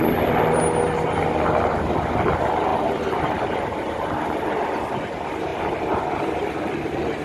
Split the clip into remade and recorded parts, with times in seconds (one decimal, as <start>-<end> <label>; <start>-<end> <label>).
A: 0.0-2.7 recorded; 2.7-4.8 remade; 4.8-5.5 recorded; 5.5-6.0 remade; 6.0-7.2 recorded